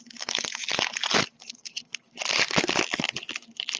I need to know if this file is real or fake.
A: real